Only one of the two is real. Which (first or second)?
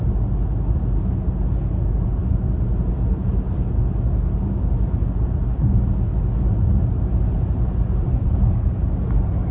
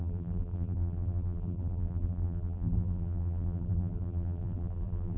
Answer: first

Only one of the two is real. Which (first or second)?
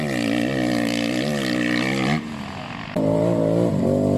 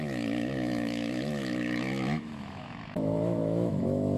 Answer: first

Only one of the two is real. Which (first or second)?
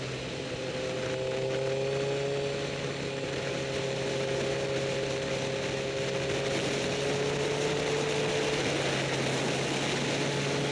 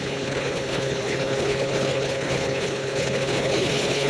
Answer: first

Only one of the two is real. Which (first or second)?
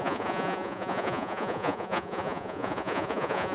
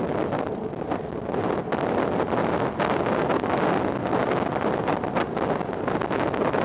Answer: second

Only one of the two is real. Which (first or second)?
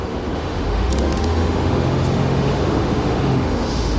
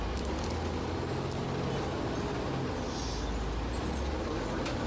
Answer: second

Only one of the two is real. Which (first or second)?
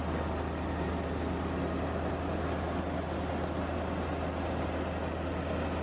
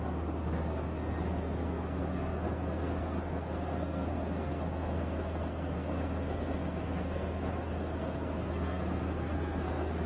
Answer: first